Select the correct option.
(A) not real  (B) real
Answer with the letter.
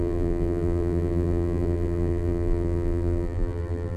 A